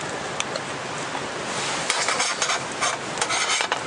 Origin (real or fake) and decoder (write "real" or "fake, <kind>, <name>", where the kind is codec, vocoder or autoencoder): real